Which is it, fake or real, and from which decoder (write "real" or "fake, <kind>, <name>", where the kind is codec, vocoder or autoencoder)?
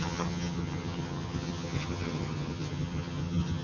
fake, vocoder, HiFi-GAN